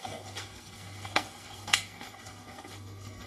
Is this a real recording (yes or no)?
no